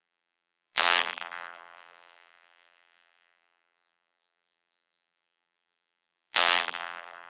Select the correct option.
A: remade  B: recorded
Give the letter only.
A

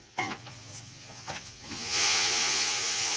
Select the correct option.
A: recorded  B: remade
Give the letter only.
B